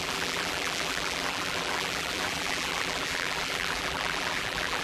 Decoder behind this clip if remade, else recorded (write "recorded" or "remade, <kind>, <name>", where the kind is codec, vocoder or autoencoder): remade, vocoder, BigVGAN v2